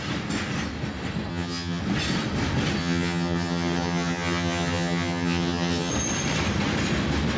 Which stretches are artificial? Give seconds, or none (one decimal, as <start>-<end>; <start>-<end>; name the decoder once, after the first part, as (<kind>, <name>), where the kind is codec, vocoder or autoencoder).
1.3-1.8 (vocoder, HiFi-GAN); 2.8-5.9